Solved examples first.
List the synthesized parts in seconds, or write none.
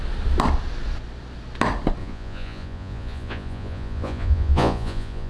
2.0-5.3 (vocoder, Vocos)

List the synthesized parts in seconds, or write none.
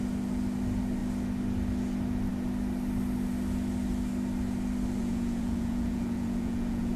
5.0-7.0 (vocoder, Vocos)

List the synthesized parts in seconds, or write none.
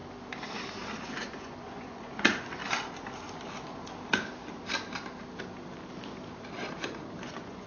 1.0-2.6 (vocoder, Vocos); 7.2-7.7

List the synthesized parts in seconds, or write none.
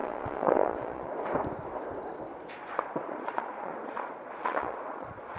0.0-1.1 (vocoder, Vocos); 2.3-5.4